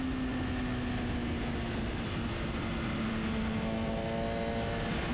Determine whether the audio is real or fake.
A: real